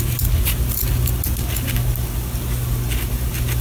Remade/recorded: recorded